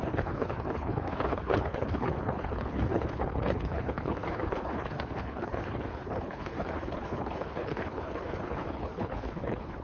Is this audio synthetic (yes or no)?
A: yes